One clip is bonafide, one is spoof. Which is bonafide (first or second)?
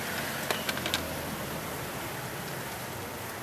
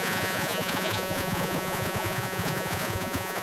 first